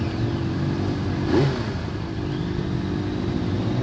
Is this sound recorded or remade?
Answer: recorded